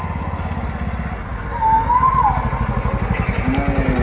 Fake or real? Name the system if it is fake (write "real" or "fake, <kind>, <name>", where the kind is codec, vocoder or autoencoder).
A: real